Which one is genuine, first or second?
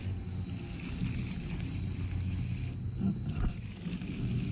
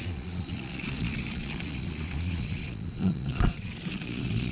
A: first